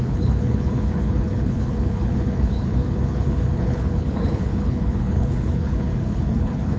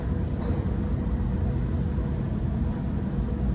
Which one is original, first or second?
second